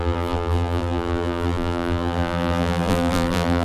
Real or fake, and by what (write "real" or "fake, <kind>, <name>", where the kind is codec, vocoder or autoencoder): fake, vocoder, BigVGAN v2